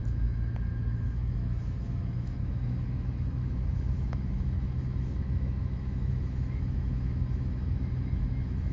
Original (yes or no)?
no